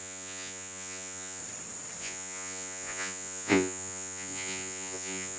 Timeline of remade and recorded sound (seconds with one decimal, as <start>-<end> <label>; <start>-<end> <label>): 0.0-1.4 remade; 1.4-2.0 recorded; 2.0-5.4 remade